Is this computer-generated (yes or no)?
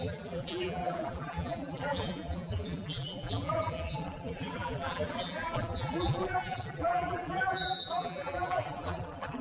yes